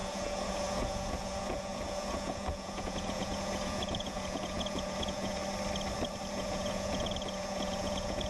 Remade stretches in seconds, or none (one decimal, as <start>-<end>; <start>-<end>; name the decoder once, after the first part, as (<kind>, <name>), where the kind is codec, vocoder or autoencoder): 0.0-5.4 (vocoder, Vocos); 6.3-8.3